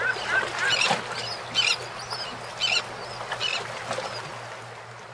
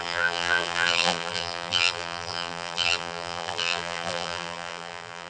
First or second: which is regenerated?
second